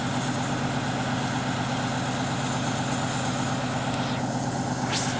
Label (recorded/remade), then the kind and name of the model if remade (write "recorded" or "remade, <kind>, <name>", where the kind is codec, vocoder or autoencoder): recorded